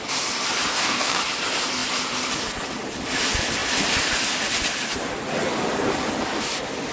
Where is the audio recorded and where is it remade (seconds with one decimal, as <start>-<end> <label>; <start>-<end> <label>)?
0.0-0.7 recorded; 0.7-1.2 remade; 1.2-6.9 recorded